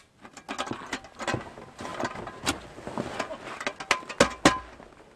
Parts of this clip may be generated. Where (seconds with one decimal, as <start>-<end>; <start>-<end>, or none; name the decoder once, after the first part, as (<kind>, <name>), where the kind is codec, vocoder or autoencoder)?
none